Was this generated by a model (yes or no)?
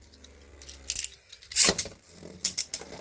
no